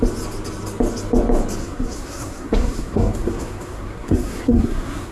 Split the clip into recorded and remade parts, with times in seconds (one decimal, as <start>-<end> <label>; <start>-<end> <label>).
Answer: 0.0-1.6 recorded; 1.6-5.1 remade